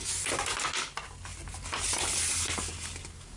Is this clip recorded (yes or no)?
yes